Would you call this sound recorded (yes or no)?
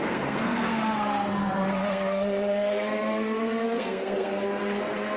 no